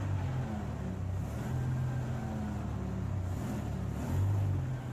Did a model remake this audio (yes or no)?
no